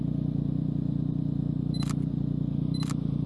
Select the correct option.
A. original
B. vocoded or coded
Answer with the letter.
A